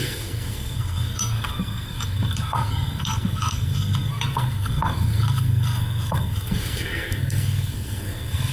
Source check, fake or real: fake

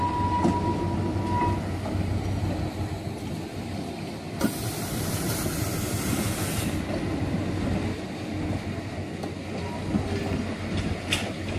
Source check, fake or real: real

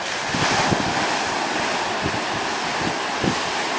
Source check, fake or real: real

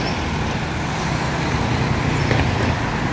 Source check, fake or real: real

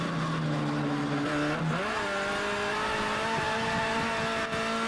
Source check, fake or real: real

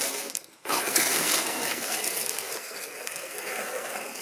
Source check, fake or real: fake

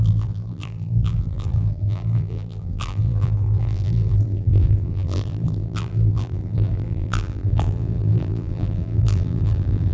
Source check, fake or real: fake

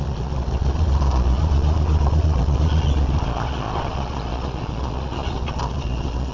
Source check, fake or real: fake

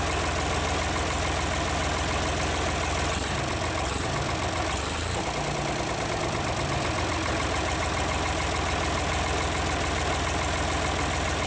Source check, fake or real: real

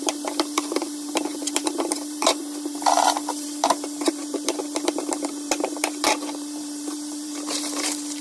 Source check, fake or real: fake